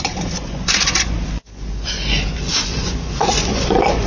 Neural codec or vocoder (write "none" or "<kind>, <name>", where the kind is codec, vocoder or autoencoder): vocoder, Vocos